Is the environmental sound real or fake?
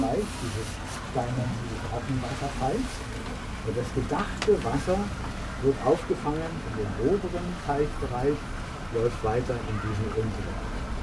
real